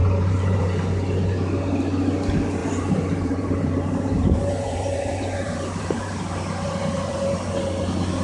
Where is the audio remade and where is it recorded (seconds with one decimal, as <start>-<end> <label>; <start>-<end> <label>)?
0.0-0.6 remade; 0.6-2.6 recorded; 2.6-7.5 remade; 7.5-8.2 recorded